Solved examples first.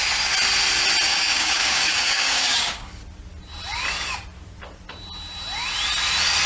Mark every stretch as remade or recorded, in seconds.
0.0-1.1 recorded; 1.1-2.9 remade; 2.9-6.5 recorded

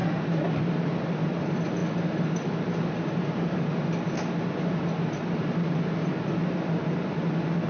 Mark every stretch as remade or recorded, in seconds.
0.0-7.7 recorded

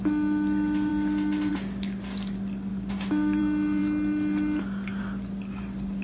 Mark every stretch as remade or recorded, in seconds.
0.0-2.7 recorded; 2.7-3.4 remade; 3.4-6.0 recorded

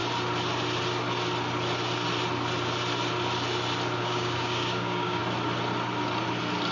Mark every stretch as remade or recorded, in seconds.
0.0-4.0 recorded; 4.0-5.2 remade; 5.2-6.7 recorded

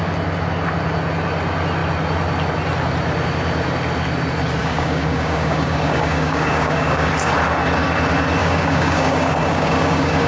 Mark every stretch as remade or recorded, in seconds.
0.0-4.6 recorded; 4.6-7.1 remade; 7.1-8.4 recorded; 8.4-10.3 remade

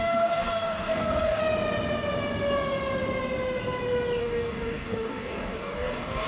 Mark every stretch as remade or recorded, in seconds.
0.0-1.4 remade; 1.4-4.2 recorded; 4.2-6.3 remade